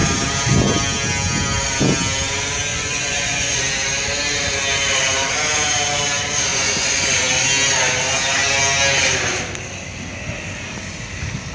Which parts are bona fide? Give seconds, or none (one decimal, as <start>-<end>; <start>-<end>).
0.0-2.7; 3.6-6.5; 7.2-11.5

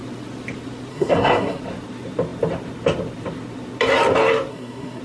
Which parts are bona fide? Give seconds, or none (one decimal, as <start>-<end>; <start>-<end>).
0.0-0.9; 1.6-4.5

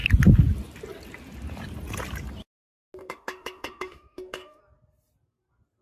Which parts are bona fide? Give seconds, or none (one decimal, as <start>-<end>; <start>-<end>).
0.0-3.0; 4.6-5.8

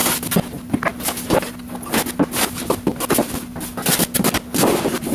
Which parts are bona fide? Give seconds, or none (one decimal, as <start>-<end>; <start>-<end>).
0.0-5.1

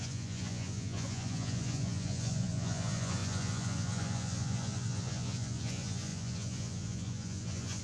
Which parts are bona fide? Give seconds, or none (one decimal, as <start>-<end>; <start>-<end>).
none